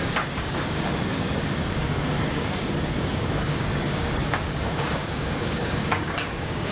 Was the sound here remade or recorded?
remade